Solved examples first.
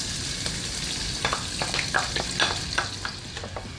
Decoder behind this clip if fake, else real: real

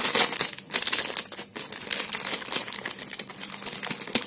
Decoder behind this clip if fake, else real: real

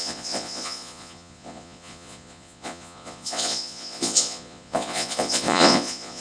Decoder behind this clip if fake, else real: fake, vocoder, Vocos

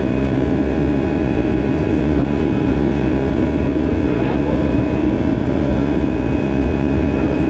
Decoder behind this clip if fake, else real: fake, vocoder, Vocos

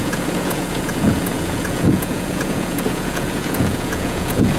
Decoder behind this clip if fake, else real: fake, vocoder, Vocos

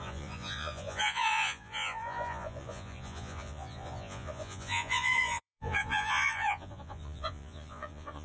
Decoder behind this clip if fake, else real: fake, vocoder, Vocos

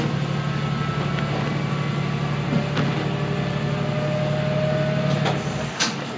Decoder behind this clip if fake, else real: real